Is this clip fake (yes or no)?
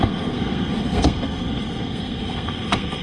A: yes